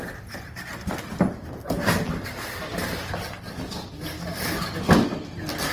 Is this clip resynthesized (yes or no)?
no